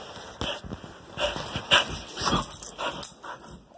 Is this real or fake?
real